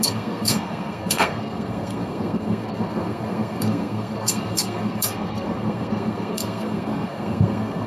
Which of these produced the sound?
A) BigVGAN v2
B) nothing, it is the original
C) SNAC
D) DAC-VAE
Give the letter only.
C